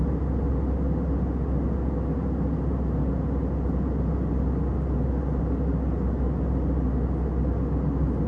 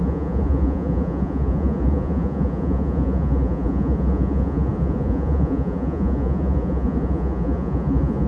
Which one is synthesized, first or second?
second